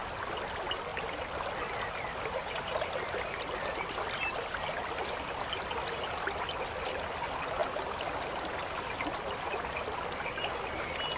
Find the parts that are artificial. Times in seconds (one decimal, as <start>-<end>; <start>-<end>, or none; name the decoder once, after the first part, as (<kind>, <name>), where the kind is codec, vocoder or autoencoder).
none